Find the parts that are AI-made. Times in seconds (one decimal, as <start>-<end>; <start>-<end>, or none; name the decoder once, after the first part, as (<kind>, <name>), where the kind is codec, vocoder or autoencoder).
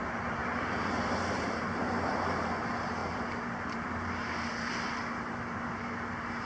0.4-2.4 (vocoder, BigVGAN v2); 3.0-4.7